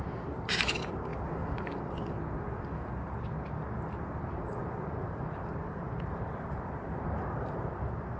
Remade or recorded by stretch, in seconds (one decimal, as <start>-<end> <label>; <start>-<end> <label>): 0.0-1.1 remade; 1.1-4.2 recorded; 4.2-8.2 remade